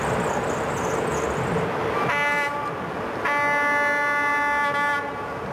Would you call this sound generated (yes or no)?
no